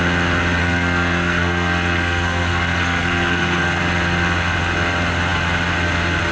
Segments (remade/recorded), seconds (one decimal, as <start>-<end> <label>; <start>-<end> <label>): 0.0-0.6 recorded; 0.6-3.8 remade; 3.8-6.3 recorded